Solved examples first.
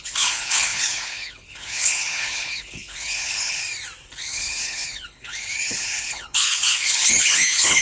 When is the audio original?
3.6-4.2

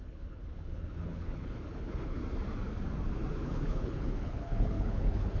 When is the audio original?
2.2-3.3

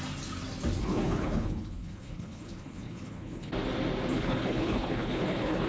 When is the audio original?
0.0-0.8; 3.5-4.1

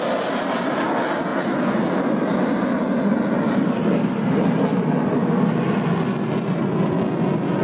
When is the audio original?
0.0-7.6

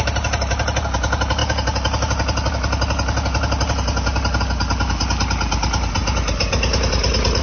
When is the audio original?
0.0-7.4

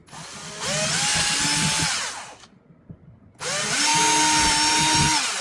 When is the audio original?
0.0-5.4

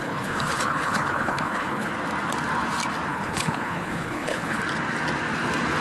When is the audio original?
1.9-3.1; 4.6-5.8

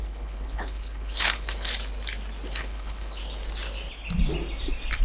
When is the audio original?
1.7-2.6; 3.2-5.0